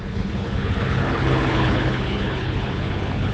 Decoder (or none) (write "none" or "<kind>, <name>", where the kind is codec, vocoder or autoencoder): codec, HILCodec